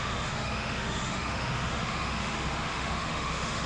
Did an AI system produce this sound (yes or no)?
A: yes